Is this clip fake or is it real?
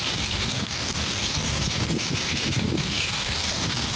fake